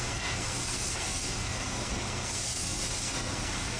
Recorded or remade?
remade